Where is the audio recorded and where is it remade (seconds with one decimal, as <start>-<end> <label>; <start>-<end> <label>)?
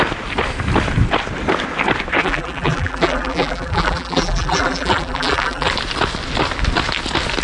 0.0-2.2 recorded; 2.2-5.7 remade; 5.7-7.4 recorded